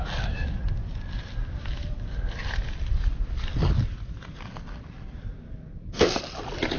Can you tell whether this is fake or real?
fake